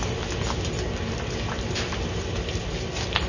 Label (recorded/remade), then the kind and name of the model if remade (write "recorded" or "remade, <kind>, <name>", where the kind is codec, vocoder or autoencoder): recorded